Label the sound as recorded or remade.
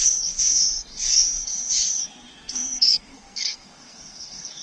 remade